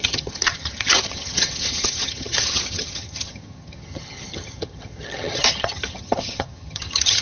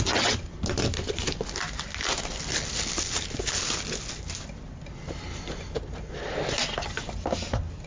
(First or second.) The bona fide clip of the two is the second